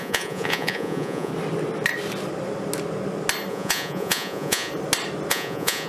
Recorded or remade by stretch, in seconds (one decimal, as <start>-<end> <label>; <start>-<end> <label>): 0.0-1.3 remade; 1.3-3.5 recorded; 3.5-4.7 remade; 4.7-5.3 recorded; 5.3-5.9 remade